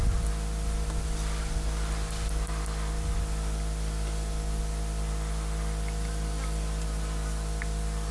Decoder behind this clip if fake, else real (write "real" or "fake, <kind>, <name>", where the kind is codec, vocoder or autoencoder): real